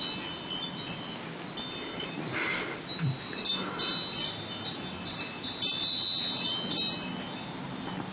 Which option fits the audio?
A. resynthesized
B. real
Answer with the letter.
B